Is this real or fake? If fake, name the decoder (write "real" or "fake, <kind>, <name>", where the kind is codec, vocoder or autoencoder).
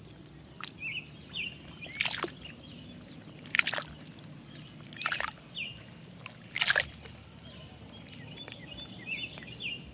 real